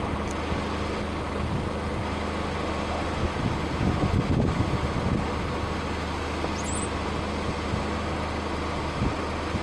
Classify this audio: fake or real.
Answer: real